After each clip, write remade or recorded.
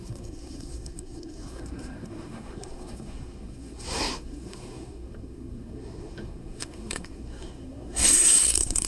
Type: remade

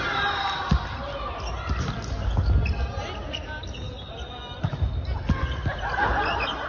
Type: recorded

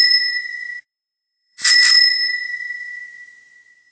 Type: remade